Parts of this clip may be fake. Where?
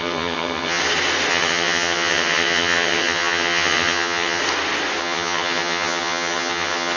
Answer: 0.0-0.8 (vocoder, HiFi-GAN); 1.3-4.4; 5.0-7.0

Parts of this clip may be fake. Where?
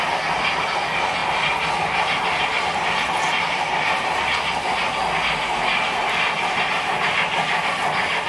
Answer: none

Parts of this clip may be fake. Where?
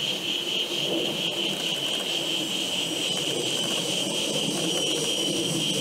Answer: 2.4-5.2 (vocoder, BigVGAN v2)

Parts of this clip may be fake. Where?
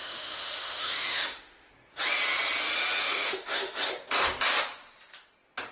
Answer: 0.0-1.7 (autoencoder, DAC-VAE); 3.0-3.8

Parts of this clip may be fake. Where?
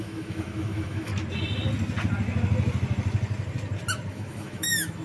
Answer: 0.0-1.1 (autoencoder, DAC-VAE); 4.1-5.0